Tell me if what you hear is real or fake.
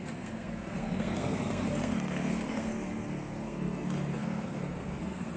fake